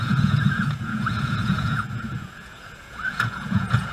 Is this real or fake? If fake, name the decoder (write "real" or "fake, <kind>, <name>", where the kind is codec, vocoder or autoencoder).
fake, vocoder, Vocos